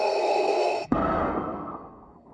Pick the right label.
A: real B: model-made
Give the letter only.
B